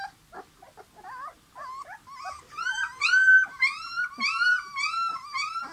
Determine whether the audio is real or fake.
real